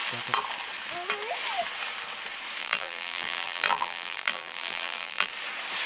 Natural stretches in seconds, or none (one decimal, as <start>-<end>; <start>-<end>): 0.0-2.6; 5.3-5.9